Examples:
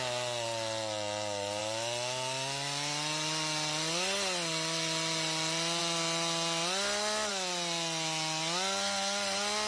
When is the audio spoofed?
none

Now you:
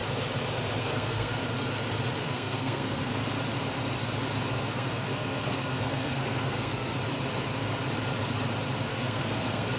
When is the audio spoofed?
0.8-1.4 (codec, SNAC); 2.2-3.2; 4.6-7.0; 8.9-9.8

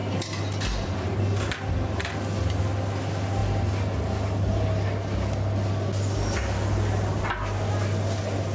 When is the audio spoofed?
none

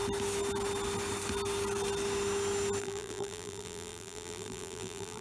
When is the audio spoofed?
2.8-5.2 (vocoder, BigVGAN v2)

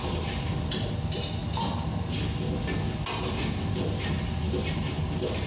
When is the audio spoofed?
none

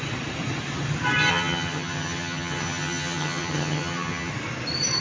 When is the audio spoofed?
1.3-4.3 (vocoder, HiFi-GAN)